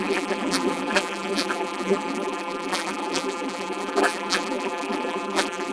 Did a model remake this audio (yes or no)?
yes